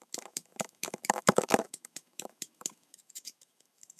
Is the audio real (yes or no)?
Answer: no